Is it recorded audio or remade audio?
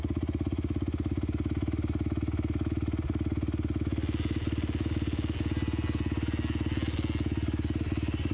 recorded